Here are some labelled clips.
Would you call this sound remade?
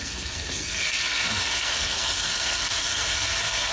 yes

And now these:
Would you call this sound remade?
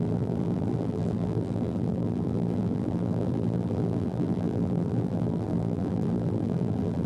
yes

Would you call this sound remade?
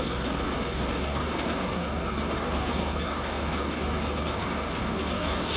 yes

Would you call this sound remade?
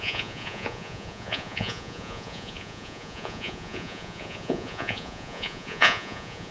yes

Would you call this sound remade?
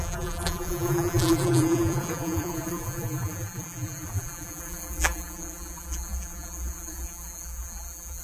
yes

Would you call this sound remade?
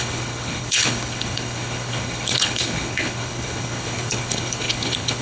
yes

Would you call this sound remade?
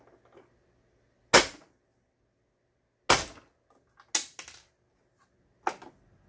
no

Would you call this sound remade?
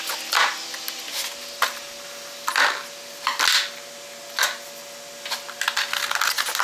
no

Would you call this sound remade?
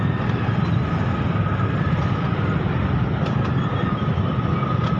no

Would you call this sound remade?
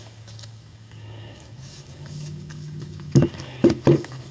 yes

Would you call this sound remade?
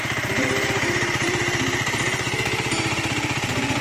yes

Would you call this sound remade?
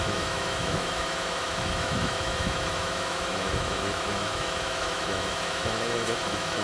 yes